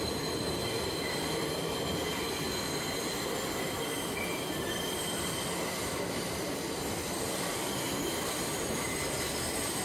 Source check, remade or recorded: recorded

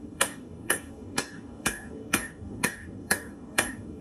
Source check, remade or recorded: remade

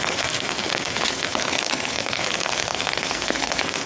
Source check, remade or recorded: remade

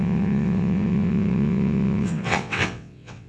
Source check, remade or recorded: remade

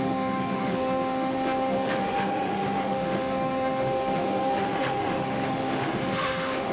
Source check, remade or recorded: remade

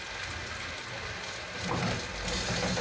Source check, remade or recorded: recorded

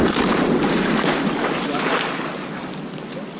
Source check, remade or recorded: recorded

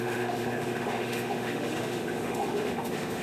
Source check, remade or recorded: remade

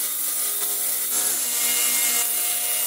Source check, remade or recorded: recorded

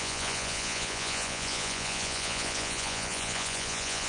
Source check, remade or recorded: remade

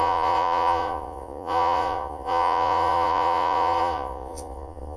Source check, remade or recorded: remade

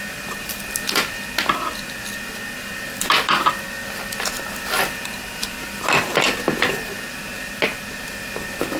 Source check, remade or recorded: recorded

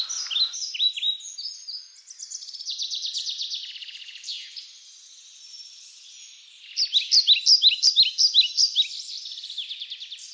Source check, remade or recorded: recorded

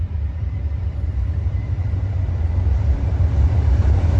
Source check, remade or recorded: remade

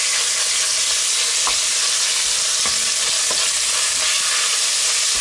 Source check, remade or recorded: recorded